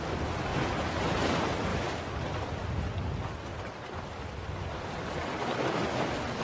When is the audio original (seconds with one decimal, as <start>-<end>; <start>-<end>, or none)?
0.0-0.5; 1.2-6.4